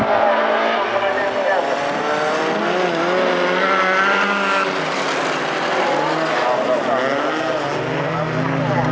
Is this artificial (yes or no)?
no